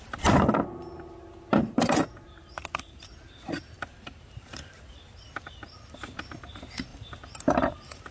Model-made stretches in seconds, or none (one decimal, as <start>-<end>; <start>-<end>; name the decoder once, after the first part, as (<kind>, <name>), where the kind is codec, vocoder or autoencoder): 1.6-5.0 (vocoder, BigVGAN v2); 6.9-8.1